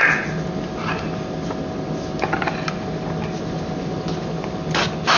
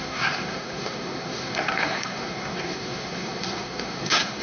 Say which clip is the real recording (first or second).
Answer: first